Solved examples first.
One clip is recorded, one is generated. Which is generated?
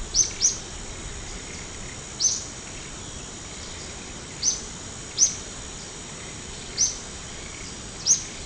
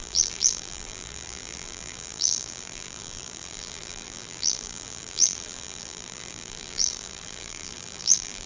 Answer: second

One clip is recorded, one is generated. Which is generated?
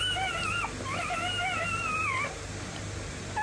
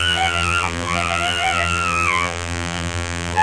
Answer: second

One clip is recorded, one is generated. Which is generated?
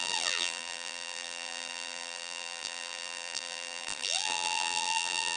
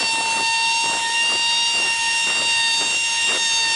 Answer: first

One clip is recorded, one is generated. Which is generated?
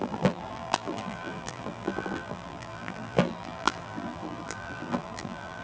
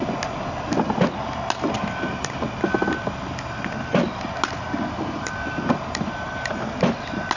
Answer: first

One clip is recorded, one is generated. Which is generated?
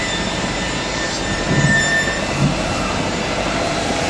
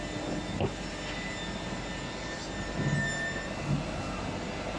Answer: first